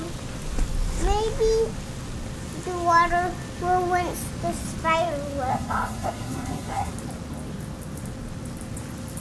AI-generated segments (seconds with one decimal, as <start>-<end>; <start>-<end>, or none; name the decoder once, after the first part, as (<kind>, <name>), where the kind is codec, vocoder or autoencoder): 5.5-6.9 (codec, SNAC)